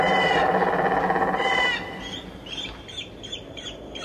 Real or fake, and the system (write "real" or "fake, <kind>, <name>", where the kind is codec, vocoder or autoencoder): real